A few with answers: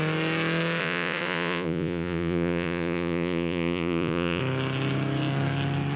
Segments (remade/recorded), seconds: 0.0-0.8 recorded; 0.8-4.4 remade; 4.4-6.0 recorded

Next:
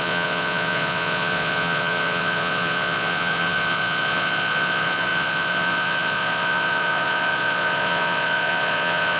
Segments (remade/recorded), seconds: 0.0-9.2 remade

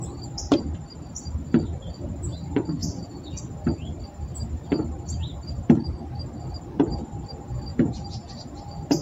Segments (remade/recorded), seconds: 0.0-2.8 recorded; 2.8-3.4 remade; 3.4-7.7 recorded; 7.7-8.3 remade; 8.3-9.0 recorded

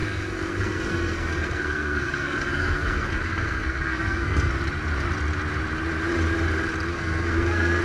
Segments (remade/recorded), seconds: 0.0-4.5 remade; 4.5-6.9 recorded; 6.9-7.8 remade

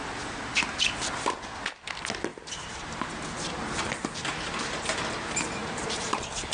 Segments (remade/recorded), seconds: 0.0-2.3 recorded; 2.3-3.4 remade; 3.4-5.6 recorded; 5.6-6.1 remade; 6.1-6.5 recorded

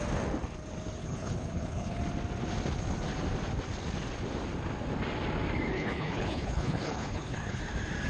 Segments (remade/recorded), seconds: 0.0-1.0 recorded; 1.0-2.0 remade; 2.0-5.7 recorded; 5.7-7.6 remade; 7.6-8.1 recorded

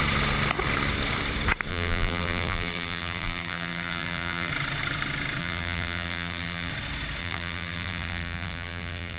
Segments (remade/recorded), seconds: 0.0-1.7 recorded; 1.7-4.5 remade; 4.5-5.4 recorded; 5.4-6.7 remade; 6.7-7.2 recorded; 7.2-9.2 remade